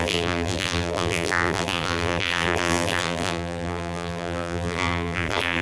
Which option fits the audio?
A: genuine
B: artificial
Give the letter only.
B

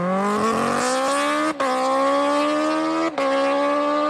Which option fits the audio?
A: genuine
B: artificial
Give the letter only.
A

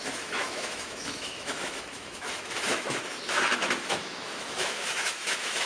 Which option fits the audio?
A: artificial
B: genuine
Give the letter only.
A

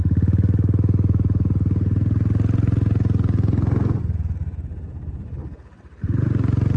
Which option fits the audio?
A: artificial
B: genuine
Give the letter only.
B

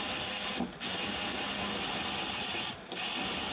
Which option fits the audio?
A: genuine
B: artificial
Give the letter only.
A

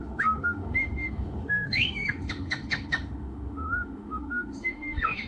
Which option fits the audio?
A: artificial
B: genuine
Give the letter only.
A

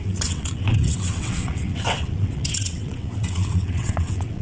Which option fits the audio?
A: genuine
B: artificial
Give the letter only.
B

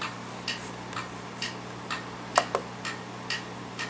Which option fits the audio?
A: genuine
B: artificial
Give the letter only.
A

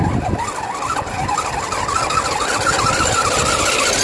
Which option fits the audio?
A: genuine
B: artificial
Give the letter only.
A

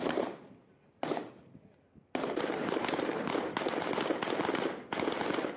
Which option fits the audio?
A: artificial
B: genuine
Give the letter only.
B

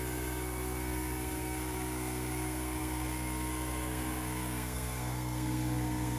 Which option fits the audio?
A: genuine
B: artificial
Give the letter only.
B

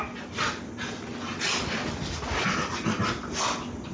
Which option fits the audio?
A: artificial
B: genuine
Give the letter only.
B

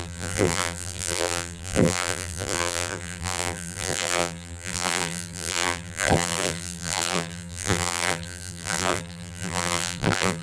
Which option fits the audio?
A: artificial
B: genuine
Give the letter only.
A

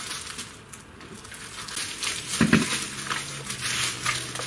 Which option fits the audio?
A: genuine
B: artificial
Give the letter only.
A